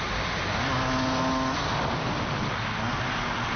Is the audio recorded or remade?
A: recorded